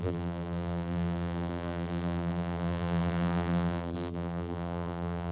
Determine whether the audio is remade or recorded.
remade